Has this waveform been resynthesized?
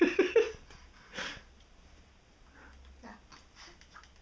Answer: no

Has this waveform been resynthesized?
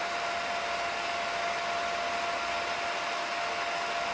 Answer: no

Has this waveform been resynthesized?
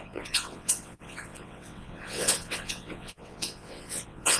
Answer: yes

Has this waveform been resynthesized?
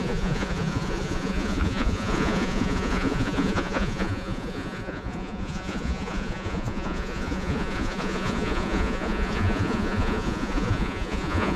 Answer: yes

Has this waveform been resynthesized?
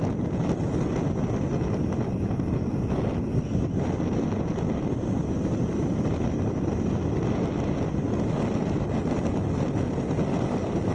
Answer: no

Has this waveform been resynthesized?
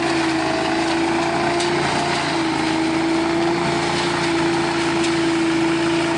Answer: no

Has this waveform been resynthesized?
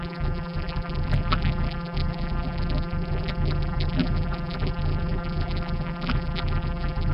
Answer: yes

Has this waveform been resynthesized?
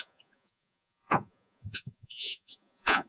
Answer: yes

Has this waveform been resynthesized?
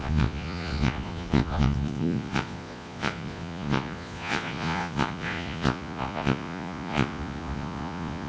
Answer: yes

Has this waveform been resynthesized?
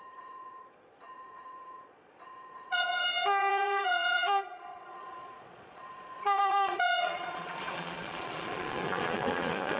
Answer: yes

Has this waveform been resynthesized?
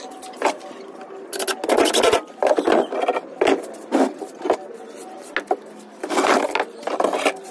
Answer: no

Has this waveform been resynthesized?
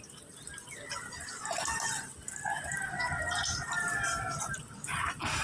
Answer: no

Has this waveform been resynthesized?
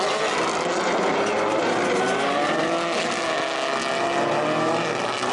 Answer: no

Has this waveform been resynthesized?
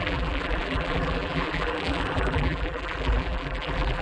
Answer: yes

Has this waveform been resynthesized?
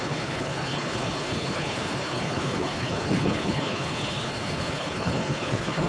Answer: yes